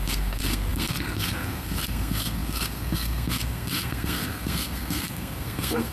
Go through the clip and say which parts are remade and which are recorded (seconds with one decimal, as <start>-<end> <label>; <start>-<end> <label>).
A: 0.0-5.9 remade

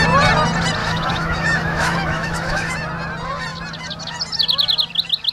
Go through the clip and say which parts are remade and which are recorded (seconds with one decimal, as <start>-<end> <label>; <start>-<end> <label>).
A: 0.0-0.8 recorded; 0.8-2.8 remade; 2.8-5.3 recorded

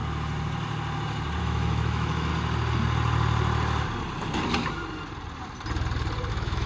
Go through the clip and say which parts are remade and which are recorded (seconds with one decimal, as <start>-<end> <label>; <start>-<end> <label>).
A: 0.0-1.4 recorded; 1.4-2.3 remade; 2.3-6.3 recorded; 6.3-6.7 remade

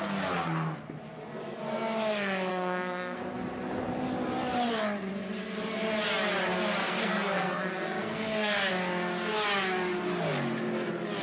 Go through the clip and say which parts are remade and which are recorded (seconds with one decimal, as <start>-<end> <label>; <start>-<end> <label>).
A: 0.0-2.5 recorded; 2.5-3.2 remade; 3.2-6.8 recorded; 6.8-8.7 remade; 8.7-11.2 recorded

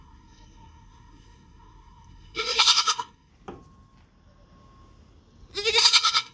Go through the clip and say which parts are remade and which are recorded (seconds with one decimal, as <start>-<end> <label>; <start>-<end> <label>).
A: 0.0-3.3 remade; 3.3-5.8 recorded; 5.8-6.3 remade

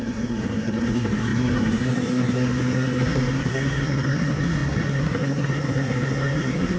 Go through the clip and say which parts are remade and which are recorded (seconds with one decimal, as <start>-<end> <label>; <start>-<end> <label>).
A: 0.0-6.8 remade

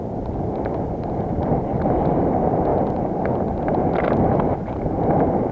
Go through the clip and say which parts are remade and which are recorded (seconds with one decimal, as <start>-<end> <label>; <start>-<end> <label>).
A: 0.0-5.5 recorded

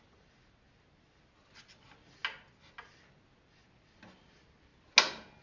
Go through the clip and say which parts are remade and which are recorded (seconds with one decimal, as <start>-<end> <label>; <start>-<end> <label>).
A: 0.0-5.4 recorded